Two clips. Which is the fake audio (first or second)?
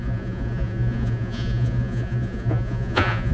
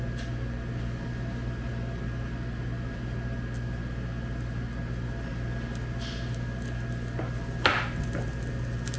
first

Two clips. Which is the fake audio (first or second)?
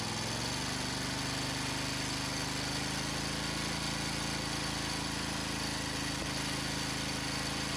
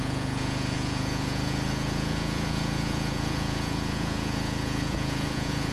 second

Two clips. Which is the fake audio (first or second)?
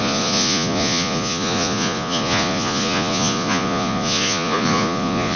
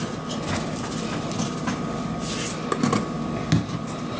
first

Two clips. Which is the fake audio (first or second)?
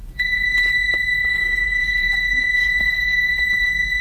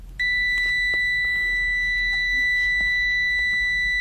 first